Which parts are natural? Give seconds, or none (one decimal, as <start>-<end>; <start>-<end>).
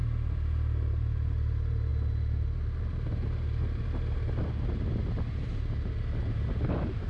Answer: 0.0-7.1